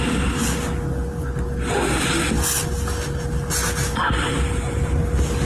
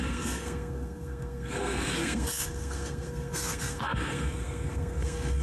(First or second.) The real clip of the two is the first